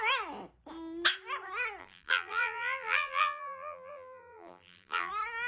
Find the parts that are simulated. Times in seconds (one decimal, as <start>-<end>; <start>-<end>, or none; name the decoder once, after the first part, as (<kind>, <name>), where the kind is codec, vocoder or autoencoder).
1.8-5.1 (vocoder, BigVGAN v2)